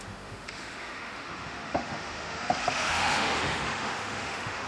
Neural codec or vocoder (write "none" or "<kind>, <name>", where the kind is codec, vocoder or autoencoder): autoencoder, DAC-VAE